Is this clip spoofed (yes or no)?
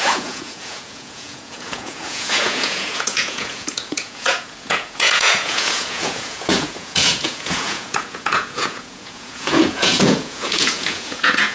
yes